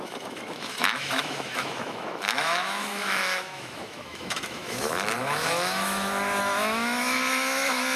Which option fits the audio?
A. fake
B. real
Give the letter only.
A